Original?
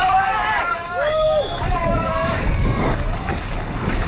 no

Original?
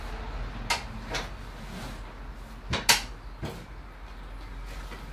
yes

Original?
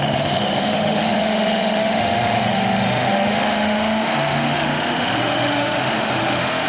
no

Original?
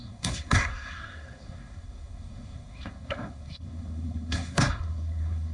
no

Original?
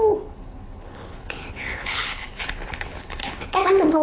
no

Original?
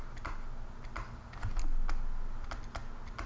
yes